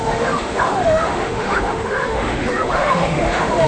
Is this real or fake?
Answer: fake